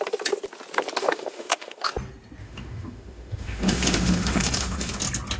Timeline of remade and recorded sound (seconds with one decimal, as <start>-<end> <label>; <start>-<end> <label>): 0.0-1.0 recorded; 1.0-1.9 remade; 1.9-2.4 recorded; 2.4-5.0 remade; 5.0-5.4 recorded

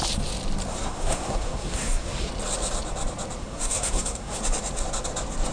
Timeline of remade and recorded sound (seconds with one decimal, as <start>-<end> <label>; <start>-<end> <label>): 0.0-0.7 recorded; 0.7-2.3 remade; 2.3-3.4 recorded; 3.4-4.4 remade; 4.4-5.5 recorded